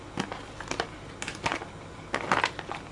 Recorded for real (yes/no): yes